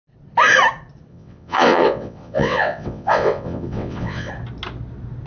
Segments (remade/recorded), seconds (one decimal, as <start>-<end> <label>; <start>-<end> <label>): 0.0-1.1 recorded; 1.1-4.3 remade; 4.3-5.3 recorded